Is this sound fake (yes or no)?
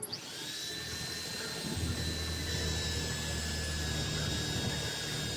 no